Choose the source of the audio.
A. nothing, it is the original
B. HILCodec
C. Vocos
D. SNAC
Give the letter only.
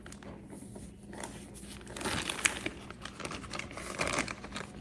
A